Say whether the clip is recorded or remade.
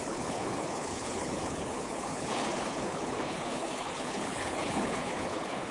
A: remade